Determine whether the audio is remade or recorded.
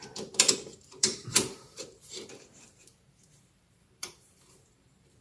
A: remade